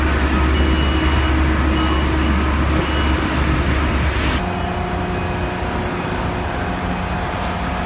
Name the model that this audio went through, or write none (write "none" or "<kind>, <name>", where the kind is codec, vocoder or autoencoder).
none